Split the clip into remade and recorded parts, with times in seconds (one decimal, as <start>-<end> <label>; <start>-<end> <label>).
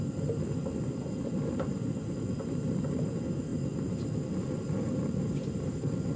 0.0-6.2 recorded